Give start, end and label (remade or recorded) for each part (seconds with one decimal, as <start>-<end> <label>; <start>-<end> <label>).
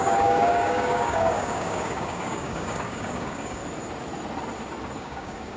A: 0.0-3.6 remade; 3.6-5.0 recorded; 5.0-5.6 remade